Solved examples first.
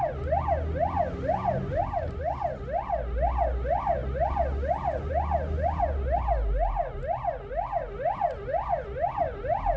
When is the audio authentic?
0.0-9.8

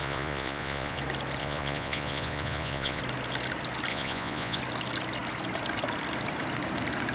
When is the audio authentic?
1.0-1.4; 3.0-3.9; 4.6-7.1

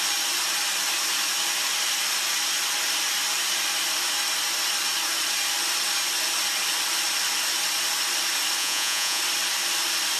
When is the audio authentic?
0.0-8.6; 9.2-10.2

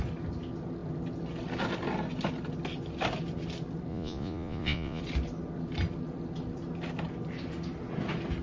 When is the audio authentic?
0.0-3.9; 5.0-8.4

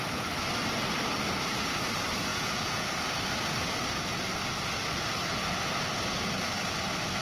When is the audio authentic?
0.0-2.3; 2.9-7.2

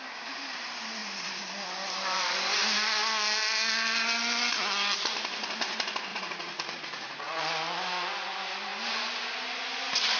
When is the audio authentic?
0.0-6.1; 7.4-10.2

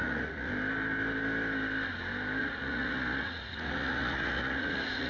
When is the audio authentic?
0.5-2.4